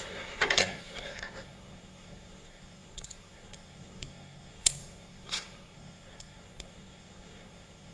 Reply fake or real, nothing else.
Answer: fake